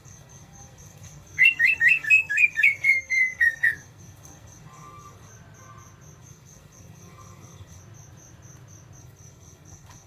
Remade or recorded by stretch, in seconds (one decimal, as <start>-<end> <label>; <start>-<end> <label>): 0.0-5.3 remade; 5.3-6.2 recorded; 6.2-7.8 remade; 7.8-9.0 recorded; 9.0-10.1 remade